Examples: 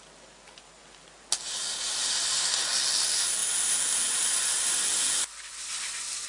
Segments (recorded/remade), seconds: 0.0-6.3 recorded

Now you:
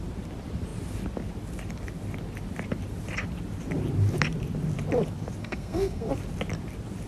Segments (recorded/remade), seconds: 0.0-5.4 recorded; 5.4-6.1 remade; 6.1-7.1 recorded

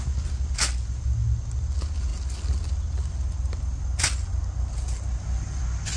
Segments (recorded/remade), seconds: 0.0-6.0 recorded